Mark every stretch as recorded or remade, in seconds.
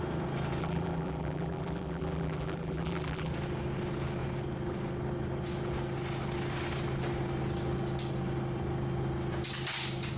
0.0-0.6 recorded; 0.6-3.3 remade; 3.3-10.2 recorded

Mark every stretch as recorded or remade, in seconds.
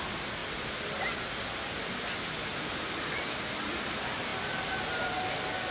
0.0-5.7 recorded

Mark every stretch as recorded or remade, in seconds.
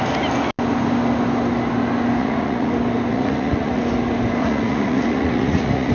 0.0-2.2 recorded; 2.2-2.7 remade; 2.7-3.1 recorded; 3.1-3.8 remade; 3.8-4.4 recorded; 4.4-5.9 remade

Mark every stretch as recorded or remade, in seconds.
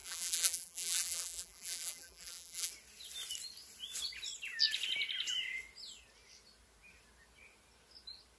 0.0-2.7 remade; 2.7-8.4 recorded